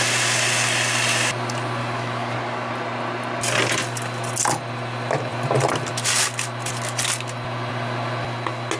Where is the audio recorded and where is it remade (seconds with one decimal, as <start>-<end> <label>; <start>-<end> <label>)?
0.0-1.8 recorded; 1.8-2.7 remade; 2.7-8.8 recorded